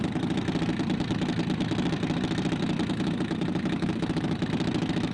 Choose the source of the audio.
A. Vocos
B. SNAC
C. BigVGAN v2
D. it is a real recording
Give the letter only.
D